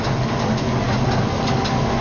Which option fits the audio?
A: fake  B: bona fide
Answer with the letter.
B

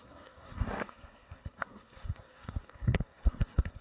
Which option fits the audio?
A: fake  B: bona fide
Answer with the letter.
A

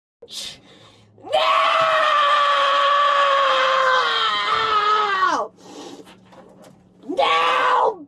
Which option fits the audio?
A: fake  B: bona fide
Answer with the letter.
B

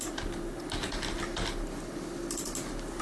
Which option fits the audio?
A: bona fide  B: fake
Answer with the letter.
A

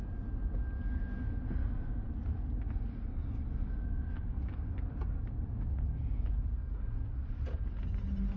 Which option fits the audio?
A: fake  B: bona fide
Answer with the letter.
B